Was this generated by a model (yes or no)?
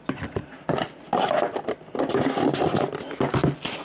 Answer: no